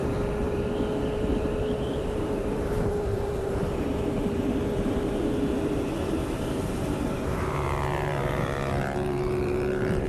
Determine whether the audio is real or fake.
fake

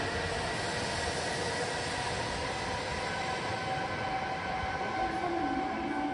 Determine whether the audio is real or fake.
real